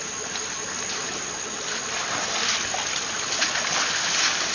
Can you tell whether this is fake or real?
real